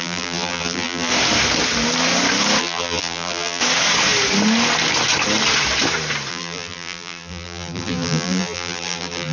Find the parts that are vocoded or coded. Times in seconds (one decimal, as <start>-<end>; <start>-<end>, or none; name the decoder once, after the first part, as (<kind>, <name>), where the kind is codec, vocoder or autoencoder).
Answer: 0.0-1.1 (vocoder, BigVGAN v2); 2.6-3.6; 6.3-9.3